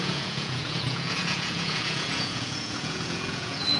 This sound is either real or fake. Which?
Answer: fake